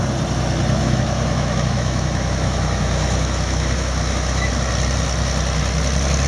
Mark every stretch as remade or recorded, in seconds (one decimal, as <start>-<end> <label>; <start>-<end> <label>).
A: 0.0-0.8 recorded; 0.8-4.5 remade; 4.5-6.3 recorded